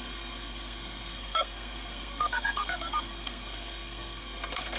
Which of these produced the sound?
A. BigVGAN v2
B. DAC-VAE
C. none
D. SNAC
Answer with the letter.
D